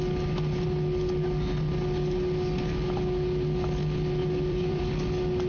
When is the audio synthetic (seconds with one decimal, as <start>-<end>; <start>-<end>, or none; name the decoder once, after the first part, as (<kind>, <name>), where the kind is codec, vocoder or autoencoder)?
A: 4.2-4.9 (vocoder, BigVGAN v2)

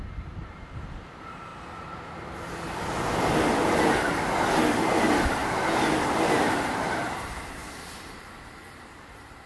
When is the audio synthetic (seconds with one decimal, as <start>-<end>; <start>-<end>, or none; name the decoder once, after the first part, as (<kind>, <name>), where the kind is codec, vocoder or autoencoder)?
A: 0.0-1.5 (vocoder, BigVGAN v2); 4.6-5.4; 6.9-9.5

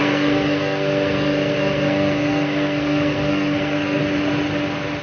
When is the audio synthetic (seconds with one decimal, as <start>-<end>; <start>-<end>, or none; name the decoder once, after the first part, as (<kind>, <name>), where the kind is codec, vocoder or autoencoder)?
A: 0.0-4.0 (codec, SNAC)

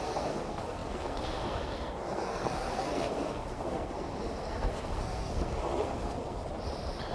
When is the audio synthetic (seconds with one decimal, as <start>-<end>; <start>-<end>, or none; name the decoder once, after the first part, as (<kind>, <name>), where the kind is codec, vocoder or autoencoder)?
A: 0.0-6.4 (codec, SNAC)

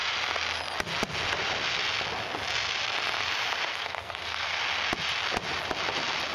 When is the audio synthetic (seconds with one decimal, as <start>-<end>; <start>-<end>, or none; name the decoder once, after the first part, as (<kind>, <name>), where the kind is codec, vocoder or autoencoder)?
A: 3.7-4.6 (codec, SNAC)